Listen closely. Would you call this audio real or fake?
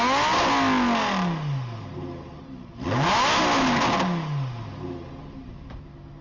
real